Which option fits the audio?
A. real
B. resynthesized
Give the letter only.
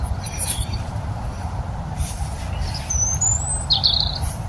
B